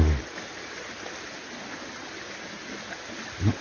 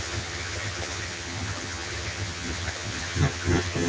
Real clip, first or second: first